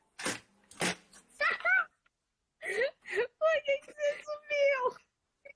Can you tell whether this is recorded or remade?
recorded